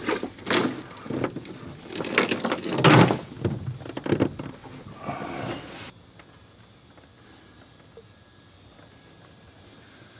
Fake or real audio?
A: real